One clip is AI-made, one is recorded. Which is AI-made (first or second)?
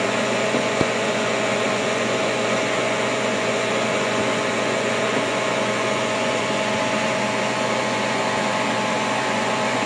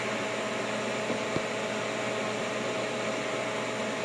first